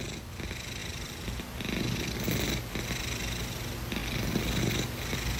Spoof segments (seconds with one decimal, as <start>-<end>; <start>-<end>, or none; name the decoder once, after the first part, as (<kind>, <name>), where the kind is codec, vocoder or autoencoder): 0.8-1.8 (vocoder, BigVGAN v2); 4.0-4.6